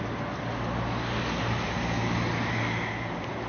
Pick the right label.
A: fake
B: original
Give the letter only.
B